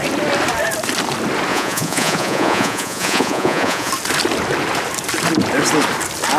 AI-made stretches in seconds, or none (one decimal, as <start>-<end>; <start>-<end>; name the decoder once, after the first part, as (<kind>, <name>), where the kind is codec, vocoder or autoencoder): 1.5-3.9 (vocoder, Vocos)